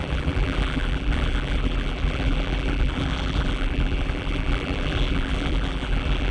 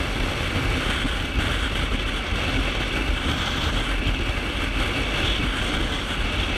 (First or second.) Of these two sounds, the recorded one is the second